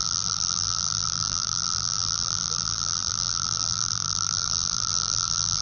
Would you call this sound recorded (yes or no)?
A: no